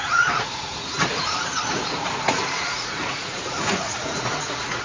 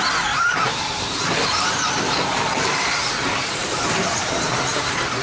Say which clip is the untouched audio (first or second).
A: second